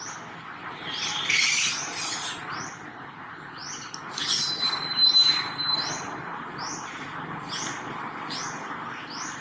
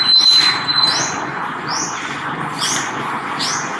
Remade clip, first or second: second